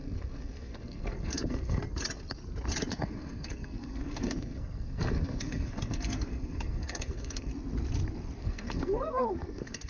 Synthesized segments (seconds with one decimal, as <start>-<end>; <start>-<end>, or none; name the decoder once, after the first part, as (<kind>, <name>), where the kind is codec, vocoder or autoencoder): 0.0-1.8 (codec, SNAC); 2.9-7.5; 8.4-9.9